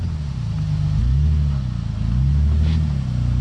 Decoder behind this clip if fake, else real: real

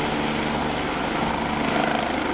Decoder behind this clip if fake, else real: real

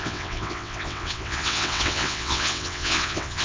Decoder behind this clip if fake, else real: fake, vocoder, WaveNeXt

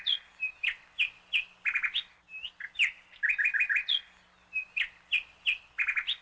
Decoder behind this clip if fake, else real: real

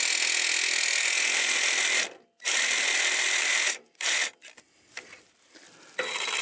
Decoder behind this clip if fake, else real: real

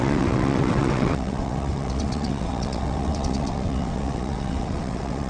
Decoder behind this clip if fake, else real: fake, vocoder, WaveNeXt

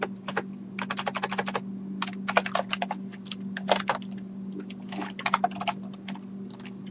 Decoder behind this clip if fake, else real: real